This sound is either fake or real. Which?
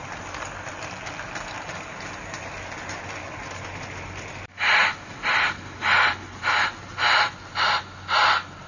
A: real